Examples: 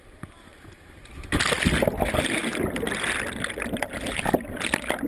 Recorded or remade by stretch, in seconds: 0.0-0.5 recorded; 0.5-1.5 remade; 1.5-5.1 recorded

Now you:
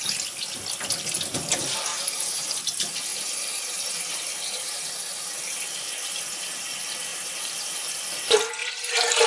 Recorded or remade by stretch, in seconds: 0.0-1.9 recorded; 1.9-2.5 remade; 2.5-3.1 recorded; 3.1-5.3 remade; 5.3-7.1 recorded; 7.1-7.9 remade; 7.9-8.6 recorded; 8.6-9.3 remade

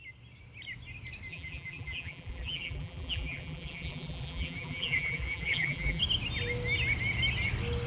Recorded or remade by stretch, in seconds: 0.0-1.3 recorded; 1.3-6.0 remade; 6.0-7.9 recorded

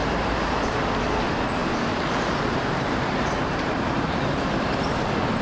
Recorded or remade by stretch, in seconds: 0.0-1.6 recorded; 1.6-4.5 remade; 4.5-5.4 recorded

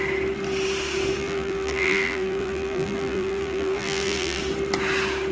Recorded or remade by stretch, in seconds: 0.0-1.2 recorded; 1.2-4.4 remade; 4.4-5.3 recorded

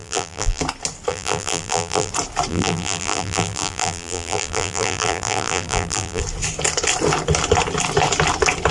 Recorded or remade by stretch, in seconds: 0.0-0.6 remade; 0.6-1.1 recorded; 1.1-2.1 remade; 2.1-2.5 recorded; 2.5-6.2 remade; 6.2-8.7 recorded

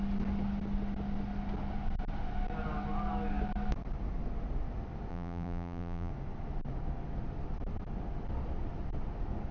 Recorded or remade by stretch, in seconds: 0.0-5.1 recorded; 5.1-6.1 remade; 6.1-9.5 recorded

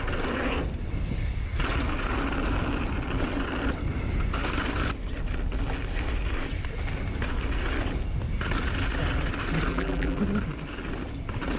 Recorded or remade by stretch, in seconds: 0.0-9.7 recorded; 9.7-10.2 remade; 10.2-11.6 recorded